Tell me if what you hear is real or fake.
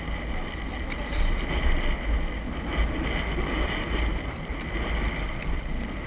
real